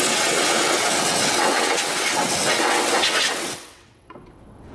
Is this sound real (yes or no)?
no